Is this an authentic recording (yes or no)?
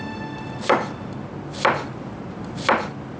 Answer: yes